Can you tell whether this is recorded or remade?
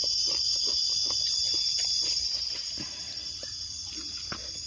recorded